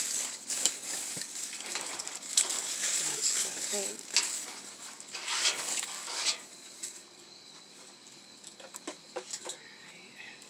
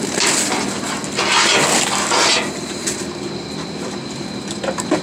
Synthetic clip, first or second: first